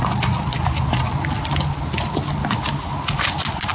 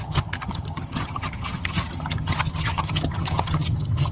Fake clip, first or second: second